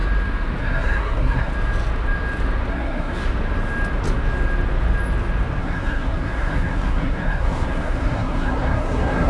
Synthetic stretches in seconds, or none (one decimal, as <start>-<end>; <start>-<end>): 0.6-1.5; 2.7-3.2; 5.6-9.3